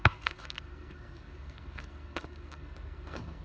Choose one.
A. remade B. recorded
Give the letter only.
A